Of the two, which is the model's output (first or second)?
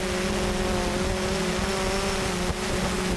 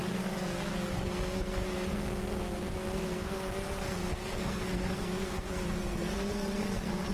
second